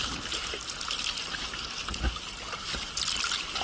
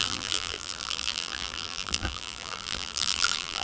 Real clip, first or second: first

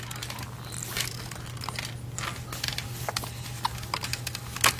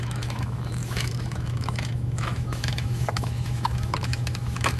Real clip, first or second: first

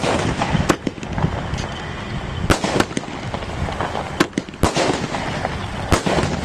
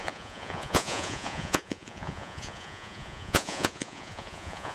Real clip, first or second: first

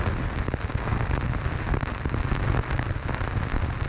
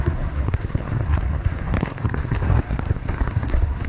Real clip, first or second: first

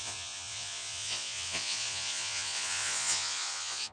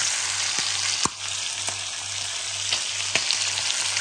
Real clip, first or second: second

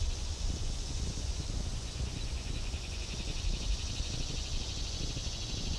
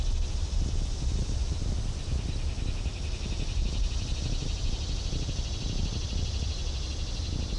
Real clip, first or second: second